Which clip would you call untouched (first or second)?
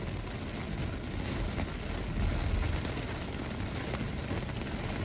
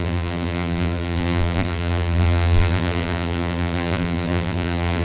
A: first